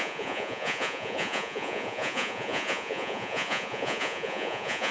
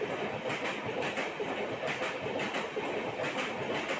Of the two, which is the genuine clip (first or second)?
second